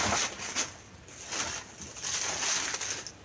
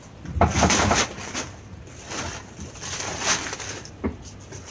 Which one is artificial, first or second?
second